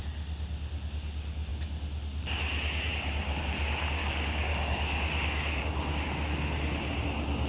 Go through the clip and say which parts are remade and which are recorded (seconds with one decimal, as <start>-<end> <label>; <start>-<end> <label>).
0.0-4.0 recorded; 4.0-5.6 remade; 5.6-7.5 recorded